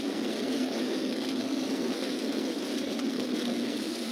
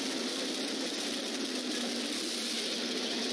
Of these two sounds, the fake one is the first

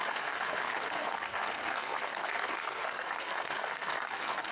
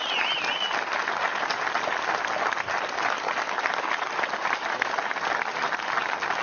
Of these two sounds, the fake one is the first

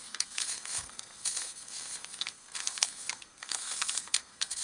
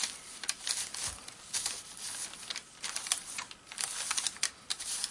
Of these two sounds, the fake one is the first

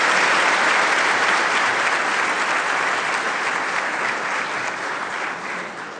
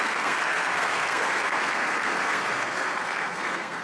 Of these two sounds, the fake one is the second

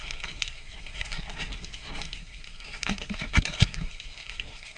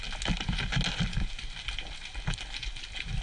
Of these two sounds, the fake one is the first